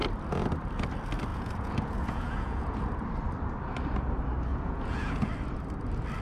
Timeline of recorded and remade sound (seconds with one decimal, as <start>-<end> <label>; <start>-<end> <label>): 0.0-1.3 recorded; 1.3-2.8 remade; 2.8-4.5 recorded; 4.5-5.3 remade; 5.3-6.2 recorded